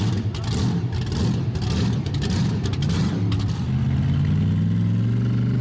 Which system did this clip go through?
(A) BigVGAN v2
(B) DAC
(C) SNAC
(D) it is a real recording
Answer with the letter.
D